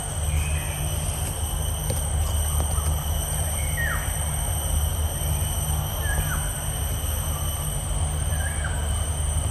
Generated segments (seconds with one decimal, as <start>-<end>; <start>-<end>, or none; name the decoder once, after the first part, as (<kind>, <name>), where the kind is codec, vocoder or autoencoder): none